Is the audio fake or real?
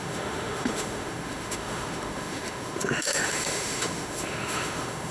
fake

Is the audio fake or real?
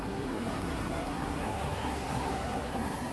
fake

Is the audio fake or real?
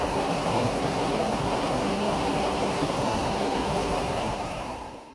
fake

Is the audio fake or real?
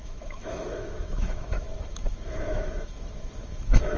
fake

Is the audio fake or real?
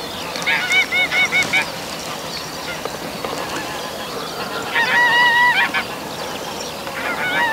real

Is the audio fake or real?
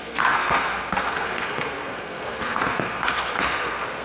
fake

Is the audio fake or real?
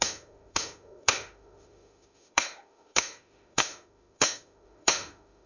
fake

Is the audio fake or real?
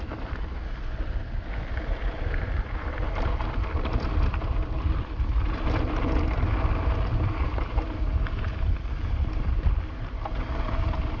real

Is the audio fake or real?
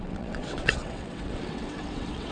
fake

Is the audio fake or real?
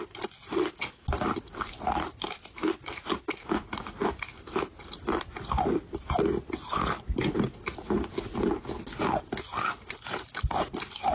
real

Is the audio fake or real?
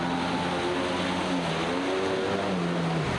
real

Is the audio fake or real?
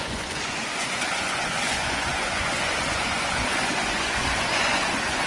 fake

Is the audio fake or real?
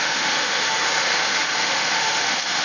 fake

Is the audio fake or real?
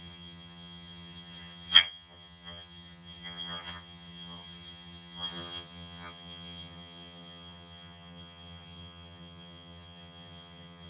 fake